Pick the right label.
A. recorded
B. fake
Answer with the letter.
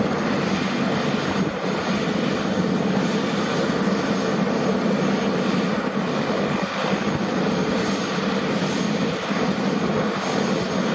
A